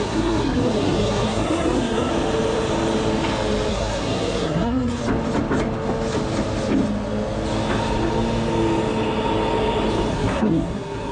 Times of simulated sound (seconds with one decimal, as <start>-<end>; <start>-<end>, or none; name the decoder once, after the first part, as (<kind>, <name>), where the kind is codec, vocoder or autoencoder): 0.0-2.1 (codec, SNAC); 3.7-5.0; 10.1-11.1